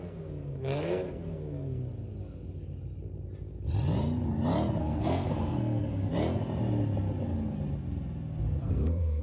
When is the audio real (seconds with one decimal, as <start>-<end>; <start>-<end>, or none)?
1.8-4.8; 6.1-8.6

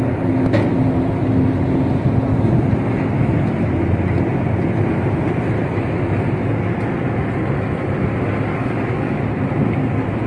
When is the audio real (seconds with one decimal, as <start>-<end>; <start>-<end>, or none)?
0.0-8.5; 9.2-10.3